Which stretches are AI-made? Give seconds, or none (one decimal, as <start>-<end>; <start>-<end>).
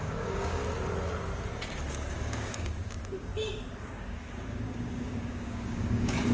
0.0-0.6; 1.9-6.3